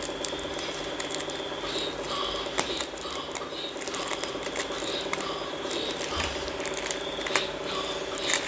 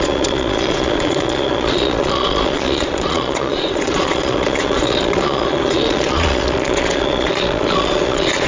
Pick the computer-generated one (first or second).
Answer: second